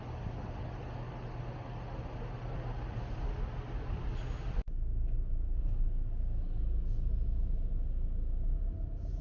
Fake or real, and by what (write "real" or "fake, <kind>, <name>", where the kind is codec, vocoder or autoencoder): real